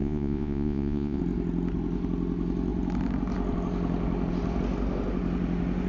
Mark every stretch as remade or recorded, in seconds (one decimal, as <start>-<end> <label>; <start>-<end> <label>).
0.0-1.2 remade; 1.2-5.9 recorded

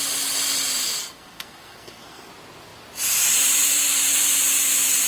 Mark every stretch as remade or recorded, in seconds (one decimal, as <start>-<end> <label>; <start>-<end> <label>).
0.0-1.0 recorded; 1.0-2.3 remade; 2.3-5.1 recorded

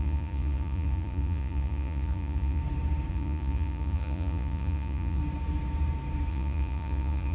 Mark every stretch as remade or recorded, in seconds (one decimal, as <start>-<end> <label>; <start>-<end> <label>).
0.0-2.6 remade; 2.6-3.1 recorded; 3.1-5.2 remade; 5.2-6.3 recorded; 6.3-7.3 remade

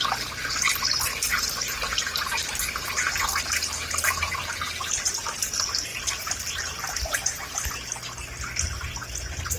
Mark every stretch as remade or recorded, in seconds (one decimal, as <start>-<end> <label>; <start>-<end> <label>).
0.0-1.3 recorded; 1.3-5.3 remade; 5.3-5.9 recorded; 5.9-7.4 remade; 7.4-9.6 recorded